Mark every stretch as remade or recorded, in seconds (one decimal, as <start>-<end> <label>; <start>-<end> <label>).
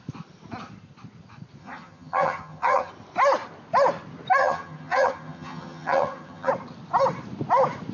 0.0-1.6 recorded; 1.6-2.9 remade; 2.9-4.4 recorded; 4.4-6.5 remade; 6.5-7.9 recorded